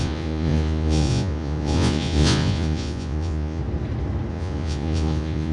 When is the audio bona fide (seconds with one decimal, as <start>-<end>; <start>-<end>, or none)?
3.6-4.3